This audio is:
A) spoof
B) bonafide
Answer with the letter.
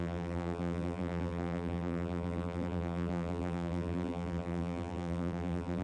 A